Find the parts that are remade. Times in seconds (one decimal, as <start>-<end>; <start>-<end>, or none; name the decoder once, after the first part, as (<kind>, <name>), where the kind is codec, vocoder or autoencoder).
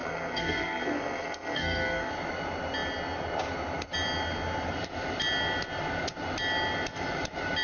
0.0-2.1 (codec, SNAC)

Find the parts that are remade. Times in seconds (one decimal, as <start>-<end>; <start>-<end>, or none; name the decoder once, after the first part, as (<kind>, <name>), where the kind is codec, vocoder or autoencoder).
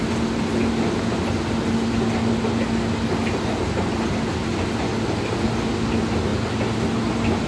none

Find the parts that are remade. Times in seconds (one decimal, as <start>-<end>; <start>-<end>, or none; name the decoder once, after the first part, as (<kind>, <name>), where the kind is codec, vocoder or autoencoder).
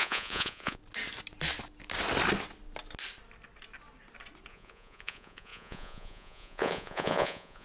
0.0-0.8 (vocoder, Vocos); 4.5-7.6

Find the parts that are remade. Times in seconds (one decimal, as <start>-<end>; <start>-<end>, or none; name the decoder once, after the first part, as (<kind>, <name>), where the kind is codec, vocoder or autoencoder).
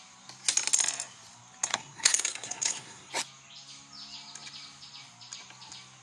1.7-3.1 (codec, SNAC)